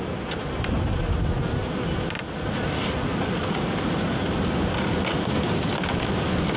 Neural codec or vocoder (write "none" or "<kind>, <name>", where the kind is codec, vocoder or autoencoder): none